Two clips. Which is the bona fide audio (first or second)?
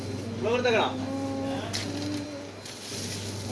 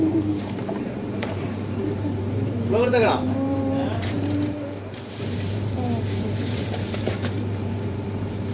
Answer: first